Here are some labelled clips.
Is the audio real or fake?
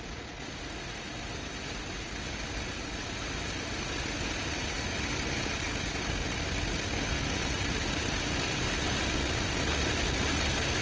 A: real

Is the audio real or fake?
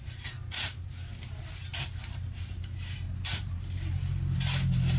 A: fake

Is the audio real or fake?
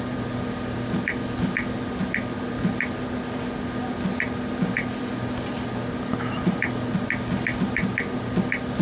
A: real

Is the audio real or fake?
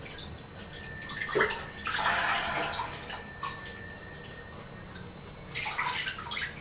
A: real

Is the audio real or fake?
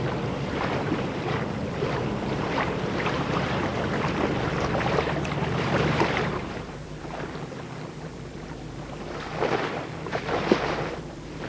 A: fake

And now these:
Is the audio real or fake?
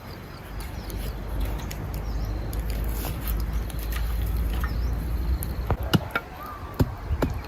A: real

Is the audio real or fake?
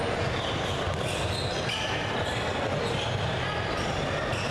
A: real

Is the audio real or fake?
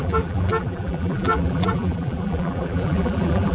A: fake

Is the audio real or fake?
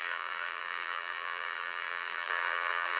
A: fake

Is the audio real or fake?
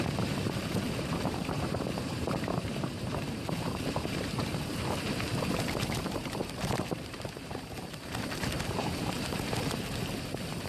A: fake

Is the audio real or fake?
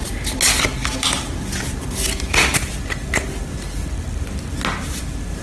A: real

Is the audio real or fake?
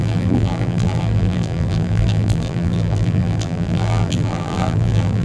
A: fake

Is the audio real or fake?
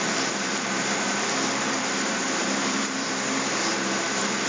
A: fake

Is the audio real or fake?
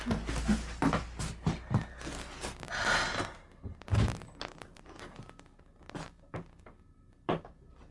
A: real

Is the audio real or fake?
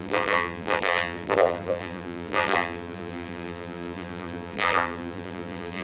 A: fake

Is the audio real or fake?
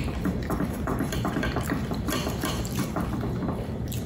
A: fake